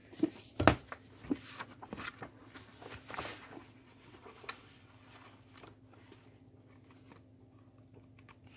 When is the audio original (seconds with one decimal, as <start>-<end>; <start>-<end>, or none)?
0.0-3.8; 4.9-8.6